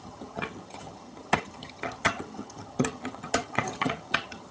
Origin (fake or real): fake